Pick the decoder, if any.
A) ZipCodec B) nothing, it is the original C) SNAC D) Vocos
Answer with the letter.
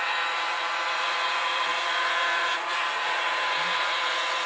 D